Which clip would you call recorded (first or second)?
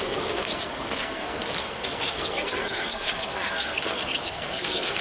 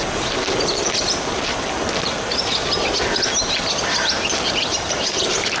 second